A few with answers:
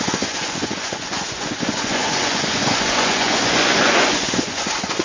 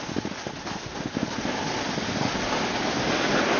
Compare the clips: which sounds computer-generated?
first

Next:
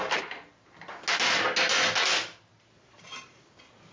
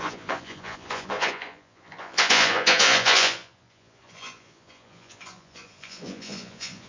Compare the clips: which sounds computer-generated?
second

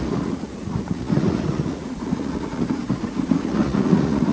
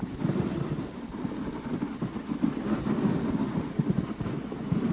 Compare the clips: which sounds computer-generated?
first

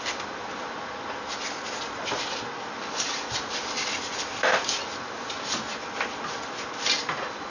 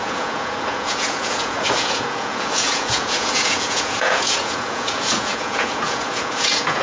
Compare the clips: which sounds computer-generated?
second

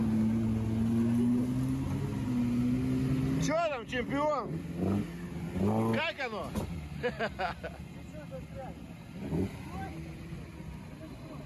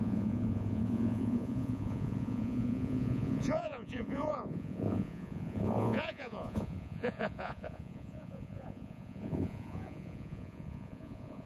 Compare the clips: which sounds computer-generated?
second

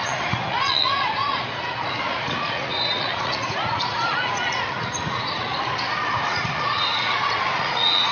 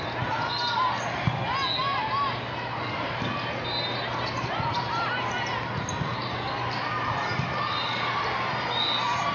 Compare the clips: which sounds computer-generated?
first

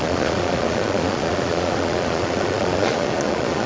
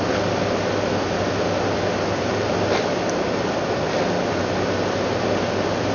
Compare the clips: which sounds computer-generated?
first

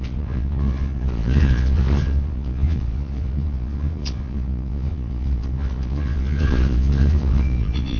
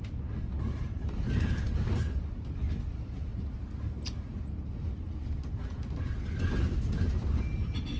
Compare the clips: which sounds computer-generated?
first